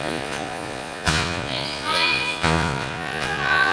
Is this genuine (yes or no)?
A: no